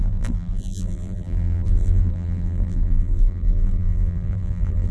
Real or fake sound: fake